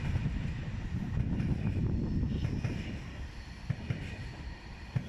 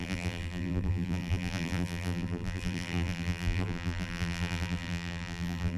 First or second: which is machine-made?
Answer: second